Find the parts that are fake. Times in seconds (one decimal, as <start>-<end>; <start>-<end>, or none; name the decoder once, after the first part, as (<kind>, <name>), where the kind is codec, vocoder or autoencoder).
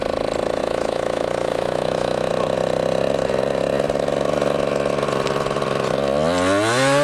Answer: 0.6-2.3 (autoencoder, DAC-VAE)